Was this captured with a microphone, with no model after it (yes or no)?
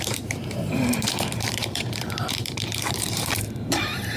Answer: no